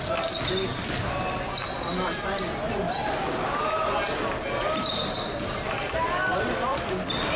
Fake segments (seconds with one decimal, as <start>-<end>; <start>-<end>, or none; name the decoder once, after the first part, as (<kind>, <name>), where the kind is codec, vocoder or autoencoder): none